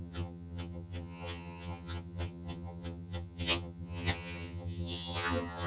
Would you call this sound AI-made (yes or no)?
yes